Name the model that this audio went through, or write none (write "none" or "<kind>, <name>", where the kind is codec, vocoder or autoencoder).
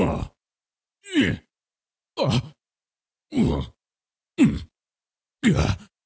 none